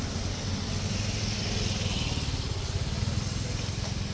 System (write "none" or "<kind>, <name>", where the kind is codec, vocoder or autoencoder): none